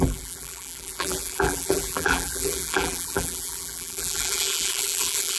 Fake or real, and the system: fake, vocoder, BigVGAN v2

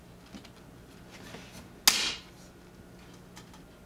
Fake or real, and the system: real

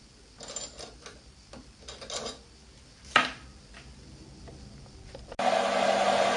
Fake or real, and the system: real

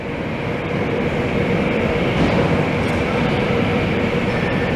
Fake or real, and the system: fake, vocoder, BigVGAN v2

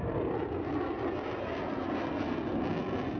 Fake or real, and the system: real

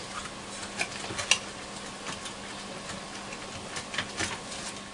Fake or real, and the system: real